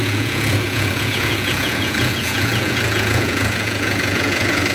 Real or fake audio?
fake